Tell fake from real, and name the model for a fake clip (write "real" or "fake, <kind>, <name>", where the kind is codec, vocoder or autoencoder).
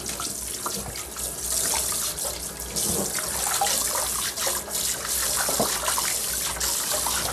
real